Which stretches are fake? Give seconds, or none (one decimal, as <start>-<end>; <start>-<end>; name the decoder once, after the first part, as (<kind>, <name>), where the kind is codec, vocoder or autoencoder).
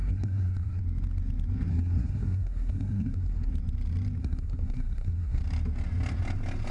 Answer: 0.0-0.8 (codec, SNAC); 1.7-3.5; 4.2-5.4